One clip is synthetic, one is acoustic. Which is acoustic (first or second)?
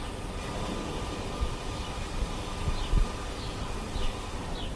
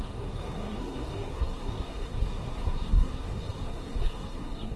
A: first